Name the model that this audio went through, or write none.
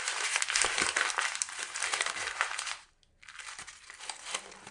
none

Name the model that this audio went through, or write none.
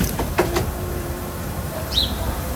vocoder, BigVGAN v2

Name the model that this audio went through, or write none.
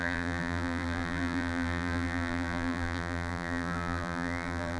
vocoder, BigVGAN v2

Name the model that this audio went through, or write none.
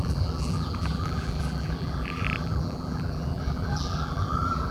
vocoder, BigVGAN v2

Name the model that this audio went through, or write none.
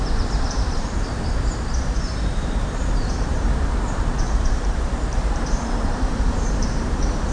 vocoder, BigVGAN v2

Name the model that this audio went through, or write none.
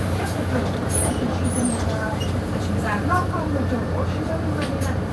vocoder, BigVGAN v2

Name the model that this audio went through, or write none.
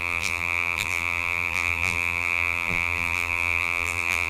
vocoder, BigVGAN v2